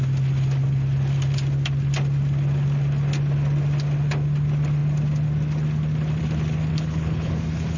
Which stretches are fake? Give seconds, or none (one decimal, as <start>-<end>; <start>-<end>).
6.7-7.3